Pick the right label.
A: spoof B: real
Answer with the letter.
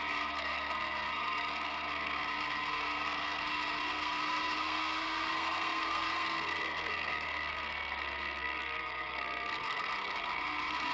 A